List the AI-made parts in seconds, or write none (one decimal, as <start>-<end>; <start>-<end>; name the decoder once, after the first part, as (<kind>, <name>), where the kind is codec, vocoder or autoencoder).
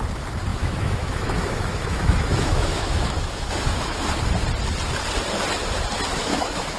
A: 0.5-4.1 (autoencoder, DAC-VAE); 6.1-6.8